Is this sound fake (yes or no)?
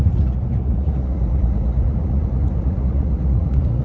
yes